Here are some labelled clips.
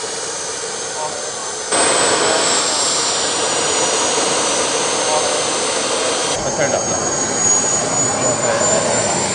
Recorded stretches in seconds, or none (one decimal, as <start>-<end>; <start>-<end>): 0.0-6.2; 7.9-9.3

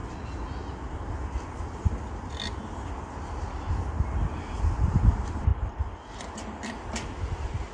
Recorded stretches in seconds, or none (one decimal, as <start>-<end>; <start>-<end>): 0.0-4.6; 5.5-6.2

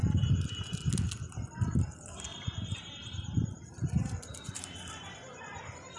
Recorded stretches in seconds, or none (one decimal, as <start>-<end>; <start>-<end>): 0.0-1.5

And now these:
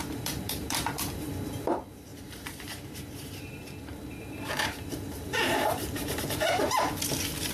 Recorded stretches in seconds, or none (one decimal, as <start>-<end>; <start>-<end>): 1.3-2.1; 6.6-7.5

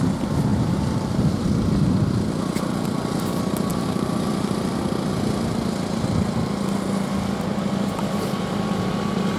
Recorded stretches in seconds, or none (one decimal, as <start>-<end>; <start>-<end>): 0.0-0.5; 1.4-3.7; 4.8-9.4

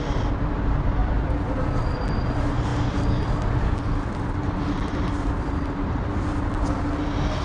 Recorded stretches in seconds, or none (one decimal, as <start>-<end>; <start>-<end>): 0.0-1.0; 1.9-7.4

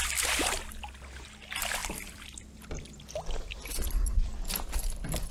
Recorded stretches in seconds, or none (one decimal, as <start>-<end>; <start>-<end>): 0.0-1.8; 2.4-5.3